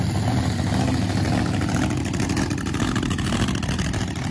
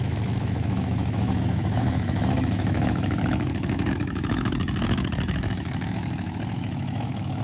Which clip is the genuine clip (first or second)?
first